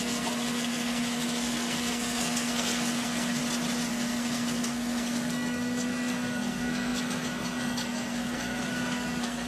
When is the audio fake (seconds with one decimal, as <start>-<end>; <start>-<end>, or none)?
0.0-3.4; 3.9-9.5

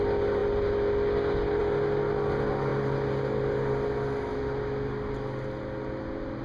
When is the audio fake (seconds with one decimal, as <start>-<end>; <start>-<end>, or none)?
none